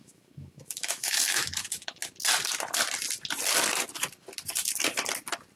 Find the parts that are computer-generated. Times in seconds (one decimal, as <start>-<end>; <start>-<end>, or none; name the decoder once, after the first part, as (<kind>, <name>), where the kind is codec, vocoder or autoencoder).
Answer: 0.0-2.0 (autoencoder, DAC-VAE)